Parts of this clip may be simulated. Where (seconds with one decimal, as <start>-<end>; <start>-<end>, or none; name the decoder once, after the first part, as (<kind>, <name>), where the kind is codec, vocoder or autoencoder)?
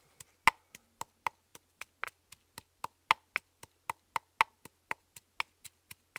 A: none